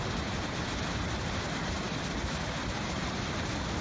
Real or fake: real